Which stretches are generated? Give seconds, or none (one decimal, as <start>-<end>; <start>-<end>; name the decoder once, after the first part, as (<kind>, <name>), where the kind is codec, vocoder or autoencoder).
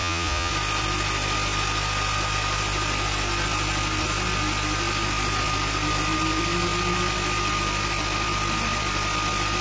0.0-0.5 (vocoder, Vocos)